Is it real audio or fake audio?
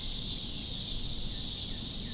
real